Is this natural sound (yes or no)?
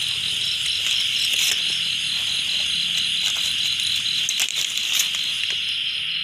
yes